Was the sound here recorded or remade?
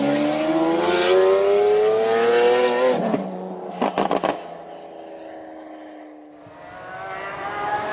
recorded